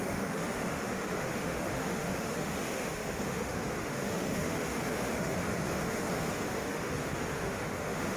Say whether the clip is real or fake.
fake